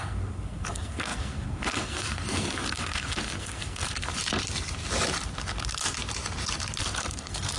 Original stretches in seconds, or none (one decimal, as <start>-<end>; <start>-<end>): 4.1-6.8